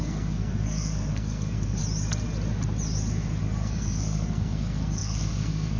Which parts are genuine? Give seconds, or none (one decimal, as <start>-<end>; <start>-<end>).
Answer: 1.8-3.4